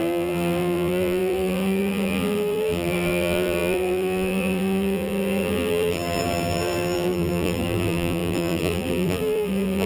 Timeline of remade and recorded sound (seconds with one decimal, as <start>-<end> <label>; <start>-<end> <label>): 0.0-9.9 remade